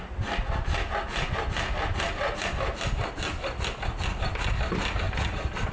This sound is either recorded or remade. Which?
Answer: recorded